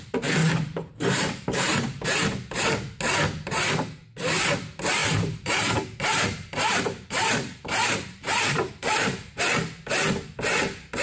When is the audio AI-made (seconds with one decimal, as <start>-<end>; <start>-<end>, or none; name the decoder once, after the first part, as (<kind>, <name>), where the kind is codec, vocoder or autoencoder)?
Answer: 0.4-2.6 (vocoder, BigVGAN v2); 5.0-9.4